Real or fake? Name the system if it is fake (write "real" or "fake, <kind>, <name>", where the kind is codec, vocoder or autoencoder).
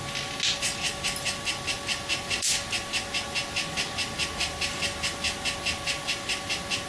real